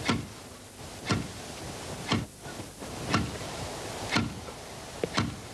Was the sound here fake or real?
real